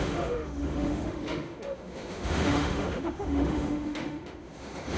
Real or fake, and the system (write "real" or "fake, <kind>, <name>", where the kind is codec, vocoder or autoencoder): fake, autoencoder, DAC-VAE